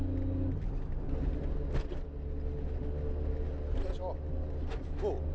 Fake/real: real